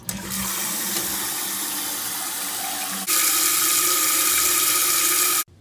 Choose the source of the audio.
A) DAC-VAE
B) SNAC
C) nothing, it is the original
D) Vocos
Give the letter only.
C